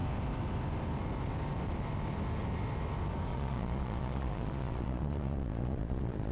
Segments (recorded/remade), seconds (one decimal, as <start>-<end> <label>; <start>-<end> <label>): 0.0-3.3 recorded; 3.3-6.3 remade